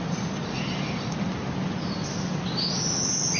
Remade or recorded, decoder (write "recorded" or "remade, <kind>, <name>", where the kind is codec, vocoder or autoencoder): recorded